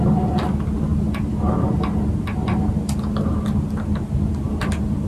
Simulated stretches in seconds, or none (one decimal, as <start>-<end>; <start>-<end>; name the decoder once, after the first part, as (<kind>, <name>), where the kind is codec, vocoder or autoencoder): none